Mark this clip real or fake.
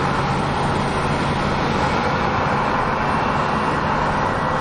real